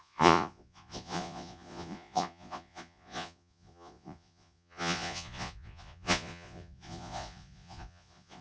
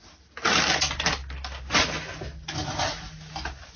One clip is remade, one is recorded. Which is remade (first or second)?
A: first